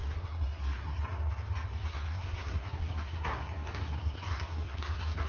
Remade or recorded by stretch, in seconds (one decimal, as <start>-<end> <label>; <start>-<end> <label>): 0.0-1.0 remade; 1.0-1.9 recorded; 1.9-5.3 remade